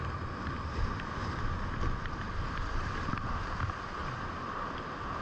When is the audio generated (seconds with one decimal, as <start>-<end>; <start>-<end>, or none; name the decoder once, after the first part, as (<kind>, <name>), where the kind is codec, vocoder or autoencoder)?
1.2-3.1 (vocoder, BigVGAN v2); 4.0-4.6